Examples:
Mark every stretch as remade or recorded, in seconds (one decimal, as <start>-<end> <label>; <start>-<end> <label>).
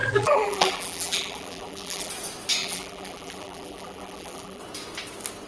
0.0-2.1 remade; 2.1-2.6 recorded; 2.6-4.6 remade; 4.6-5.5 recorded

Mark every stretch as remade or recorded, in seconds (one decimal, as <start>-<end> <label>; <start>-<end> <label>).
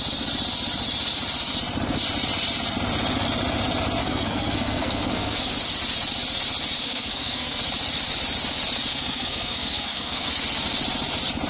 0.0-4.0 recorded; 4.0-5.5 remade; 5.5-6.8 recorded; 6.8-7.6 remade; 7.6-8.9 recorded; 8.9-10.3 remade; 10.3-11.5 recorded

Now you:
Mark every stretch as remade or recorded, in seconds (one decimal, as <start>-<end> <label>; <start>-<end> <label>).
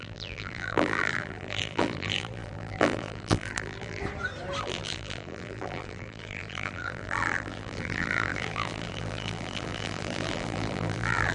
0.0-4.0 remade; 4.0-4.6 recorded; 4.6-11.3 remade